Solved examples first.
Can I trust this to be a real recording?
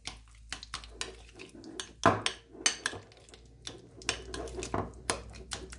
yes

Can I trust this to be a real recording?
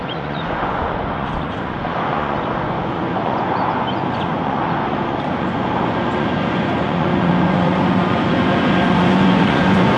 no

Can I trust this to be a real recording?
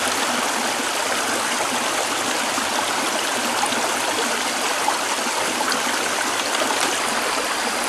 yes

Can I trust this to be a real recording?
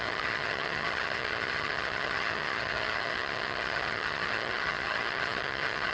no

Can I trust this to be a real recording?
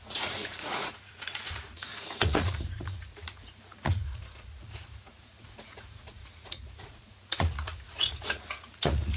no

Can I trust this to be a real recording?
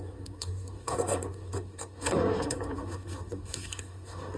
no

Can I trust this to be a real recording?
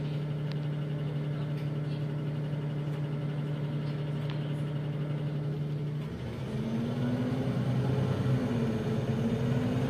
yes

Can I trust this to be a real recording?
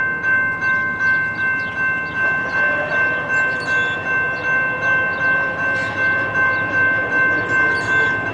yes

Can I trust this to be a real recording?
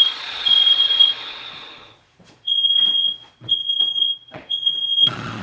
no